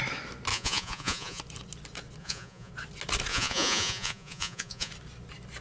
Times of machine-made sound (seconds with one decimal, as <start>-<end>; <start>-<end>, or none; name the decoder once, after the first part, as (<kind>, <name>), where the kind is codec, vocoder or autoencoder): 0.5-1.4 (vocoder, Vocos); 2.2-2.7; 3.3-4.9